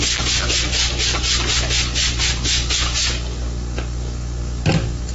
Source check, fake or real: real